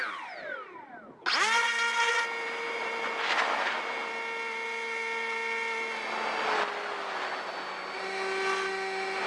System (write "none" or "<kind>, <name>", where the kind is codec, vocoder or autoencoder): none